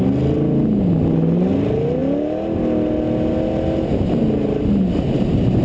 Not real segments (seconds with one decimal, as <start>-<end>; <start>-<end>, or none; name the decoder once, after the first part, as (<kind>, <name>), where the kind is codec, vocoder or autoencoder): none